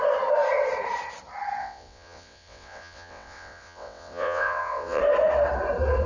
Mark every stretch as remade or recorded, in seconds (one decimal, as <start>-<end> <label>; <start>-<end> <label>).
0.0-1.6 recorded; 1.6-5.0 remade; 5.0-6.1 recorded